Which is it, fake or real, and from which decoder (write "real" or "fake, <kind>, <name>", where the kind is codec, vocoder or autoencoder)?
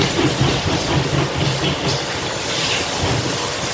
real